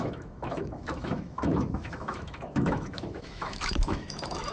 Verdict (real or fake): fake